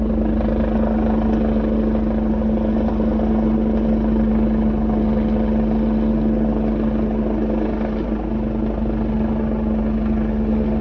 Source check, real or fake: real